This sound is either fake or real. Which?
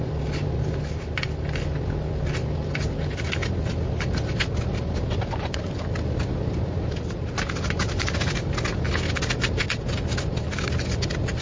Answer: real